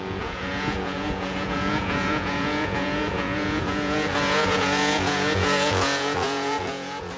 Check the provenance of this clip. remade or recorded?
remade